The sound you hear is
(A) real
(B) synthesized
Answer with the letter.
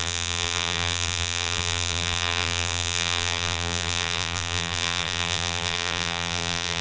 B